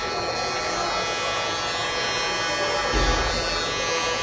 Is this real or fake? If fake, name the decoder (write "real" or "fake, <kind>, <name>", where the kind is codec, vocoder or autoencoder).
real